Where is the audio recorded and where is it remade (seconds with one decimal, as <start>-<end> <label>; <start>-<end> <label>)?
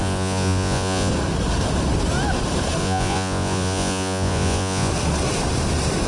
0.0-1.1 remade; 1.1-2.8 recorded; 2.8-4.9 remade; 4.9-6.1 recorded